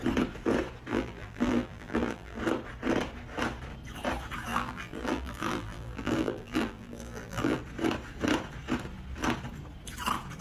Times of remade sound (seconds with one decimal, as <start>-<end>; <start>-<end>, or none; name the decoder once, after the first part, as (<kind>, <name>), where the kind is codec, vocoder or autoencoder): 0.9-2.4 (vocoder, BigVGAN v2); 4.5-7.6